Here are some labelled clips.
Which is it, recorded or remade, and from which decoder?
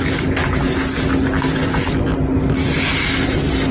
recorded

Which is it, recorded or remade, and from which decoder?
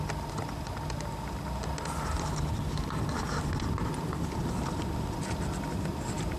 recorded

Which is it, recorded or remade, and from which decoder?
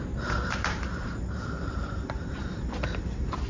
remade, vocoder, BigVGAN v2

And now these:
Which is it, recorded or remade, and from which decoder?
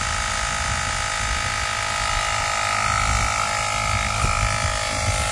recorded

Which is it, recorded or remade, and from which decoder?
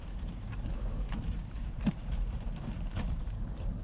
remade, vocoder, BigVGAN v2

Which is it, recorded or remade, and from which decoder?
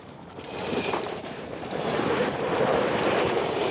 remade, vocoder, BigVGAN v2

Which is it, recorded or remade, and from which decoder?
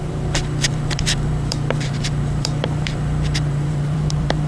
remade, vocoder, BigVGAN v2